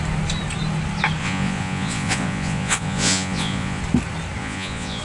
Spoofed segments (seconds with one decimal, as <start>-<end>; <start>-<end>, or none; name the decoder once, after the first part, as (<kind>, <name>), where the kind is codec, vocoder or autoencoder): 1.2-3.8 (vocoder, Vocos); 4.4-5.0